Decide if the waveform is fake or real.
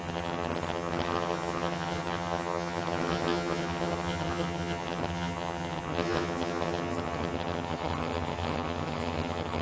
fake